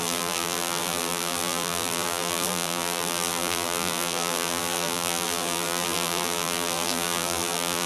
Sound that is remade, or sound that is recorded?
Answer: remade